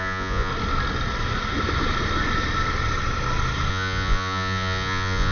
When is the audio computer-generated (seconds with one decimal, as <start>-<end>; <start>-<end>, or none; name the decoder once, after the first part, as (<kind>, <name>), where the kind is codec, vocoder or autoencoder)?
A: 0.0-0.5 (vocoder, Vocos); 3.7-5.3